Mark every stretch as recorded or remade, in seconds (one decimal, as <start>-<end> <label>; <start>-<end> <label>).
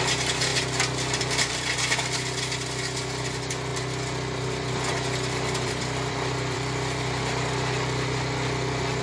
0.0-3.7 recorded; 3.7-7.2 remade; 7.2-9.0 recorded